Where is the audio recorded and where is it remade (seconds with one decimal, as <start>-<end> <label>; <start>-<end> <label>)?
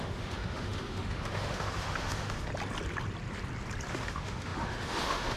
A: 0.0-2.5 remade; 2.5-3.9 recorded; 3.9-5.4 remade